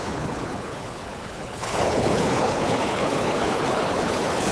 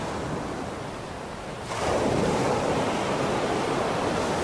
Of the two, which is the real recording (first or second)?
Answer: second